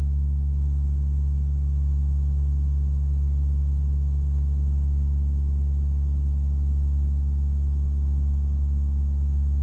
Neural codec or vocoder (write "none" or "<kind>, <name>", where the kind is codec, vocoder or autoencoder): none